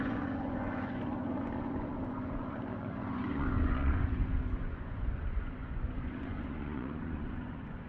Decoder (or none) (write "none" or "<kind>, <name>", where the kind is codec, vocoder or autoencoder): vocoder, Vocos